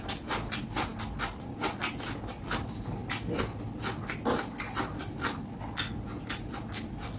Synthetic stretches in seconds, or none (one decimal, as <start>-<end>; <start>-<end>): none